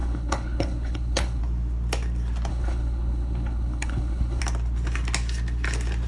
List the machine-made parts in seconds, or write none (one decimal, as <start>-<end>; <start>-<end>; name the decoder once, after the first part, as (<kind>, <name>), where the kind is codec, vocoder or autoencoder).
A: 0.0-1.4 (codec, HILCodec); 2.5-4.4